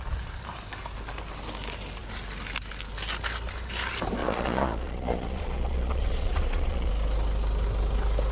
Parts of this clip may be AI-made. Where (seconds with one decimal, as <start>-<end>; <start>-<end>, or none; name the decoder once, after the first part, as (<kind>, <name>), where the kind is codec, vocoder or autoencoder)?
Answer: 4.2-6.9 (vocoder, Vocos)